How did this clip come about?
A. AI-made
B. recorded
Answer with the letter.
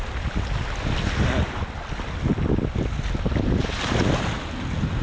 B